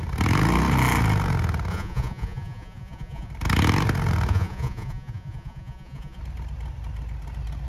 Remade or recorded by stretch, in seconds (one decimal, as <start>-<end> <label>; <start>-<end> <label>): 0.0-1.7 recorded; 1.7-3.3 remade; 3.3-4.3 recorded; 4.3-6.2 remade; 6.2-7.7 recorded

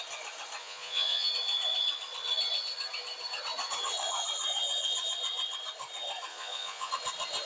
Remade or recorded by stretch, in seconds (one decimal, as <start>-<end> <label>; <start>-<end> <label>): 0.0-0.6 recorded; 0.6-1.3 remade; 1.3-6.3 recorded; 6.3-6.9 remade; 6.9-7.5 recorded